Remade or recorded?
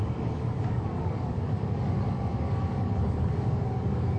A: remade